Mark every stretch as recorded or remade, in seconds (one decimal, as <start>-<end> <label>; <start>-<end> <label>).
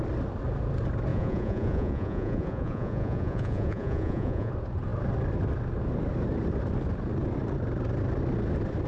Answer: 0.0-1.1 recorded; 1.1-4.5 remade; 4.5-8.9 recorded